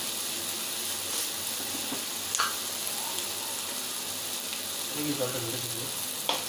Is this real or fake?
real